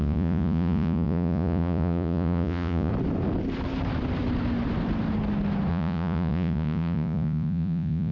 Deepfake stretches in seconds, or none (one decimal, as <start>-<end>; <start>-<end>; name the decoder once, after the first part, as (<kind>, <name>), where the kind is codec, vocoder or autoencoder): 0.0-2.9 (vocoder, Vocos); 5.7-8.1